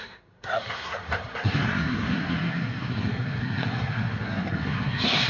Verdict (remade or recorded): remade